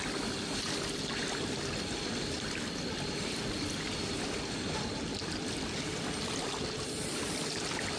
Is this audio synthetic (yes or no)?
no